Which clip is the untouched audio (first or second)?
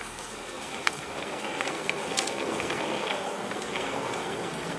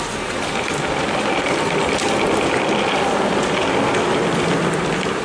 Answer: second